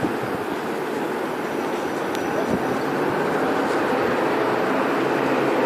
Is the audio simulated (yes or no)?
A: no